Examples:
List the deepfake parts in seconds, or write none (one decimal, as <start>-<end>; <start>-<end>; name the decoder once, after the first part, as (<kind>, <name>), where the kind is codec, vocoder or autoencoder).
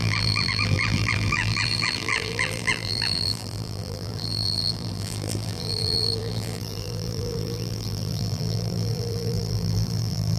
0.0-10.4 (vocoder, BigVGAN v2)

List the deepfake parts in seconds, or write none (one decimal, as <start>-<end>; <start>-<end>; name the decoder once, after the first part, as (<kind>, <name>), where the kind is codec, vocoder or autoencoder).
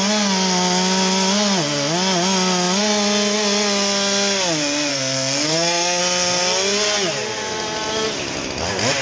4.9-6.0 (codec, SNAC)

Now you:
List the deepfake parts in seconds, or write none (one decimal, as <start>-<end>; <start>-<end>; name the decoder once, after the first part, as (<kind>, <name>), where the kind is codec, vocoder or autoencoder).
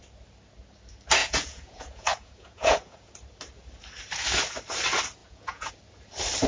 1.2-3.1 (vocoder, Vocos); 5.2-5.7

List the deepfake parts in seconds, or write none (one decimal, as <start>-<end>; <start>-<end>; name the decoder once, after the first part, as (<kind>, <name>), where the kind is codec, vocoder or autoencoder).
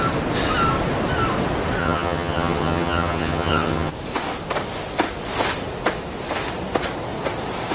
1.8-3.9 (vocoder, HiFi-GAN)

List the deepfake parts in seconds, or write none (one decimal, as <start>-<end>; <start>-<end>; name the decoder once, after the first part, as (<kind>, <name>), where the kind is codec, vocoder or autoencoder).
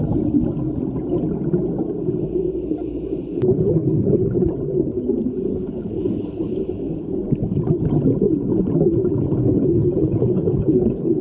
3.5-4.5 (codec, HILCodec); 5.5-6.5; 9.4-11.2